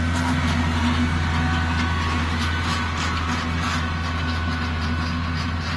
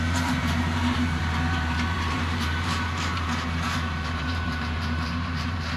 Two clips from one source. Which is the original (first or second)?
first